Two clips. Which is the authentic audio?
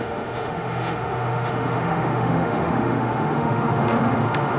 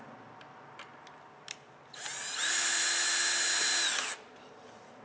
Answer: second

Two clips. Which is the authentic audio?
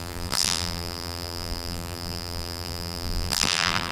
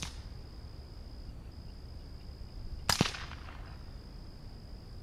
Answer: second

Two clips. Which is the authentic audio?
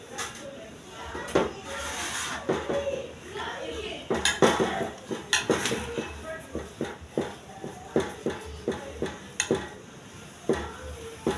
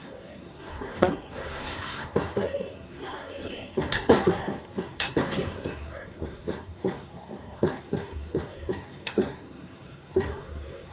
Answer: first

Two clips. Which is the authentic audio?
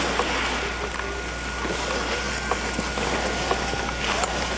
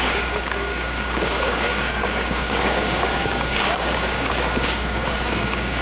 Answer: first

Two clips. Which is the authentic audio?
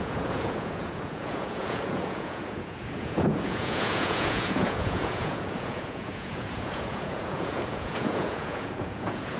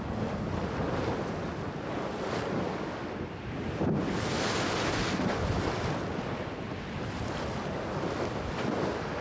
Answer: second